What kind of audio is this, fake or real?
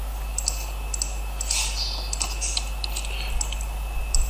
real